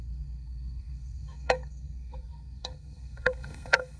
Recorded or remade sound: remade